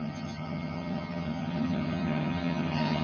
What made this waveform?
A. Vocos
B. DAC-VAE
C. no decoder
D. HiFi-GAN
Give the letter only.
D